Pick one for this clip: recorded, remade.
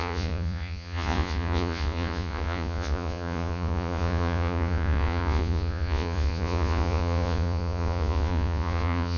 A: remade